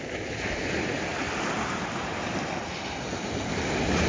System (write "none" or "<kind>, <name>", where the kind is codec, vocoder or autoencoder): none